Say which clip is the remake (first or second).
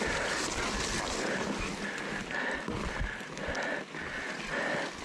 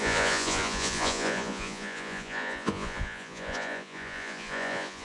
second